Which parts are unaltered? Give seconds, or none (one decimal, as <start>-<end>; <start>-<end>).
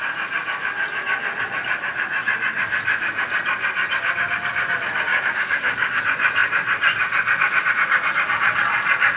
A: 0.0-5.1; 6.0-9.2